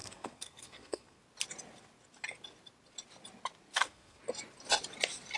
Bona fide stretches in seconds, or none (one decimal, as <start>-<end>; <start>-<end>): 1.2-3.7; 4.2-5.4